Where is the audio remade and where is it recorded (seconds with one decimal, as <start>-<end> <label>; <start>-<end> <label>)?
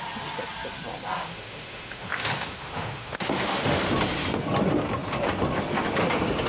0.0-1.2 recorded; 1.2-3.9 remade; 3.9-6.5 recorded